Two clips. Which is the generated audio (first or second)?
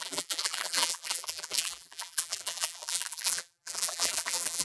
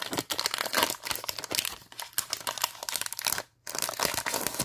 first